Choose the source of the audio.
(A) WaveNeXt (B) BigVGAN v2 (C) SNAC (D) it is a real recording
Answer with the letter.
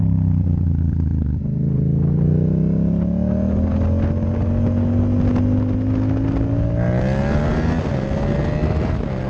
D